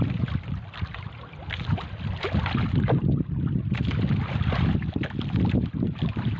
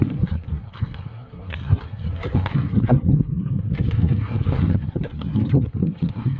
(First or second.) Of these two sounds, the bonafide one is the first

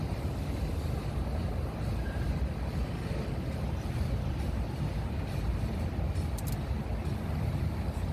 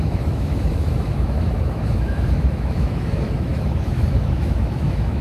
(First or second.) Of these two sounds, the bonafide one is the first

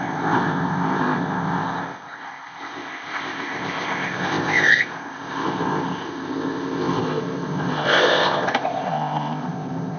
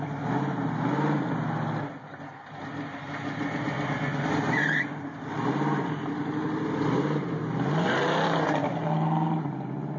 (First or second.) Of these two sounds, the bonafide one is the second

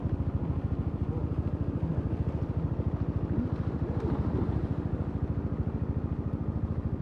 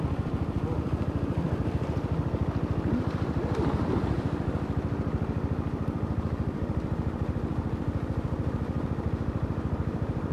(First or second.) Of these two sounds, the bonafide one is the first